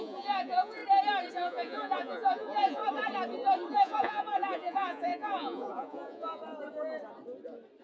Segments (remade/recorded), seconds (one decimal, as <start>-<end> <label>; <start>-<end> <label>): 0.0-0.8 remade; 0.8-1.3 recorded; 1.3-2.8 remade; 2.8-3.7 recorded; 3.7-6.4 remade; 6.4-7.8 recorded